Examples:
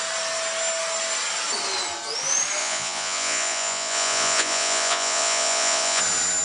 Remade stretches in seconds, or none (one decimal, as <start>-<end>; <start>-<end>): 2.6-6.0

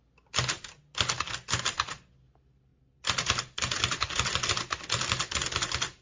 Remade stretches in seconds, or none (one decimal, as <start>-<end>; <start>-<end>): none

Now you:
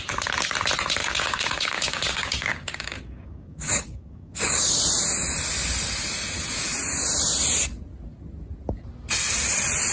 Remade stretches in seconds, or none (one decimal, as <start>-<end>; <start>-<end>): 1.0-4.8

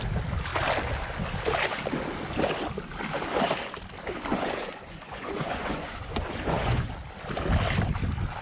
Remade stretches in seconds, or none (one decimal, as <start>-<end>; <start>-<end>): 4.3-6.9

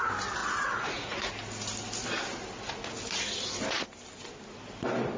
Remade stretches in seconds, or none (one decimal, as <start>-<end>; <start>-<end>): 0.4-1.3

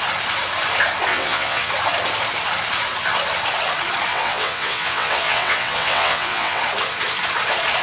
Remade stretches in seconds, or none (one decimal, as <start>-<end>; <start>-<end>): 1.1-1.7; 4.1-6.6

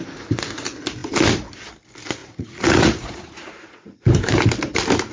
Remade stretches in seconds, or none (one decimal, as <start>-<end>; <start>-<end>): 2.2-4.0